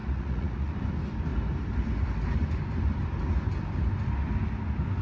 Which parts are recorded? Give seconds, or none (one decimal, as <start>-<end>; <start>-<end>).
0.7-5.0